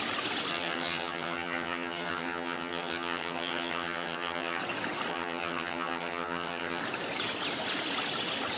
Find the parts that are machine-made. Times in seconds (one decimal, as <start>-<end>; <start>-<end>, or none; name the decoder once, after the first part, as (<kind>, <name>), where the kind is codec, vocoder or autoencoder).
0.5-4.6 (vocoder, HiFi-GAN); 5.1-6.8